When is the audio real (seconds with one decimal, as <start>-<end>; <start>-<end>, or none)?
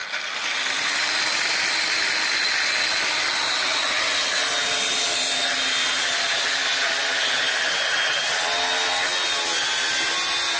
0.0-10.6